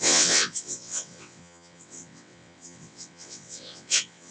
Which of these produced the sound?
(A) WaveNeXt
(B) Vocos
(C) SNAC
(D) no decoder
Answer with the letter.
A